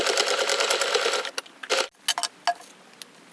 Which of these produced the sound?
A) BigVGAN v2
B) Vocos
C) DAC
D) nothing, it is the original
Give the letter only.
D